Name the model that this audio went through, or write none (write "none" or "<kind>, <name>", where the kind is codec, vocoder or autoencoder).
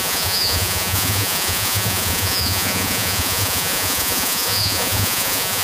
vocoder, Vocos